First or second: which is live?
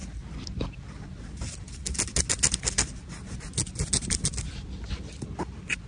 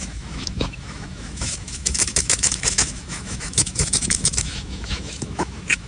first